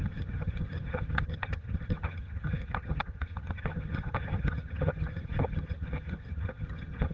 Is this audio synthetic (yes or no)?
yes